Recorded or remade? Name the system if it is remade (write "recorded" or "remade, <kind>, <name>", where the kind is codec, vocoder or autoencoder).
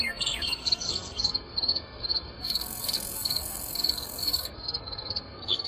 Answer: remade, codec, SNAC